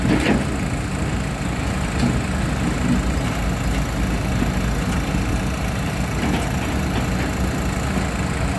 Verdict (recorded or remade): recorded